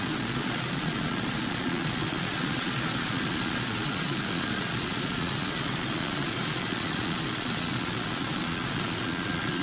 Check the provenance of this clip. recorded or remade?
remade